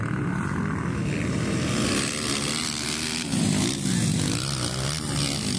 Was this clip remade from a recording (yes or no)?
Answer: no